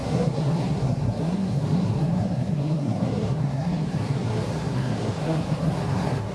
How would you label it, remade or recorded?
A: remade